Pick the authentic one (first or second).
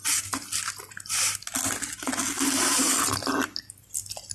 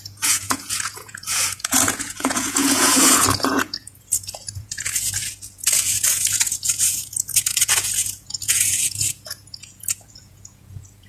first